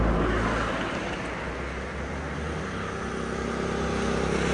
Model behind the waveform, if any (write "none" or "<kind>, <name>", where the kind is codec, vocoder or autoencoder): none